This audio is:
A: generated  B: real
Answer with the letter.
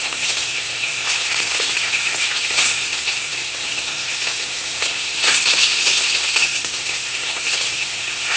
A